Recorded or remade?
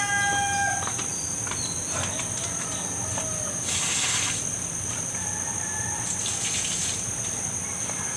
recorded